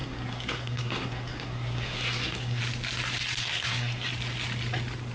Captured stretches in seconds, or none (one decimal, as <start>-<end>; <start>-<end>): 2.6-3.4; 4.1-5.1